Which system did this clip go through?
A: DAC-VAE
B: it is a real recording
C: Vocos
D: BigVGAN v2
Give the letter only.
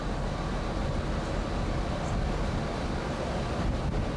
B